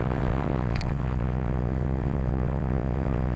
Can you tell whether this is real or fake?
fake